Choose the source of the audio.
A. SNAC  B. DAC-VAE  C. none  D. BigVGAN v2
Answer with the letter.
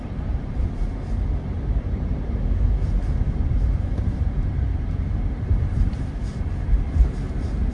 D